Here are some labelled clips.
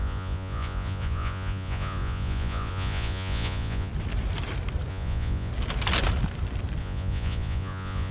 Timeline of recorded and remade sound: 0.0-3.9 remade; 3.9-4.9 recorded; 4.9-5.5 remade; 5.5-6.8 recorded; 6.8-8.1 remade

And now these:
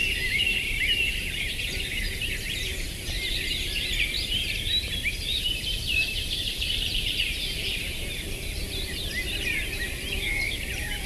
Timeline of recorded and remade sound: 0.0-11.1 remade

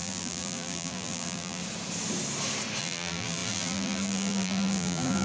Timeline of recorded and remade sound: 0.0-1.6 remade; 1.6-2.8 recorded; 2.8-5.2 remade